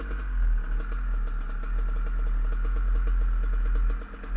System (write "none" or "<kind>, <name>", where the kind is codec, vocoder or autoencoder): none